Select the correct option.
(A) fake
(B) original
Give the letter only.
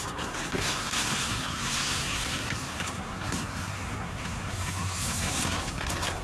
A